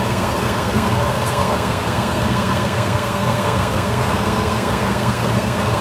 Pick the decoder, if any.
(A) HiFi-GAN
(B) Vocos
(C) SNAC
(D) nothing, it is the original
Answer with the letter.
C